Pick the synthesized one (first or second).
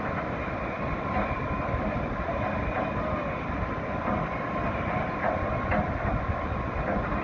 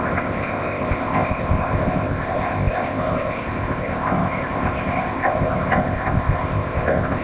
second